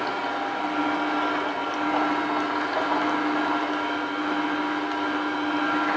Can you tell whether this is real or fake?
real